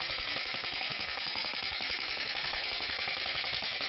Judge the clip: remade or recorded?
remade